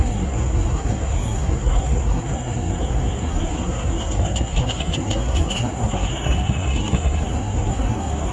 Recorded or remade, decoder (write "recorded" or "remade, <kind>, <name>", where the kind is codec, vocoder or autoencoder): remade, codec, SNAC